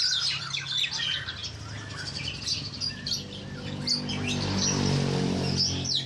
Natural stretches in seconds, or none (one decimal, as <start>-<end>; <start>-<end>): 0.0-6.1